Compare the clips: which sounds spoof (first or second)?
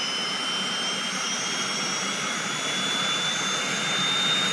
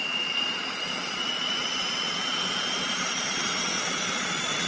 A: second